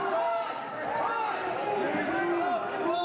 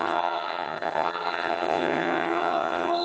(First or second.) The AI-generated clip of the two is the second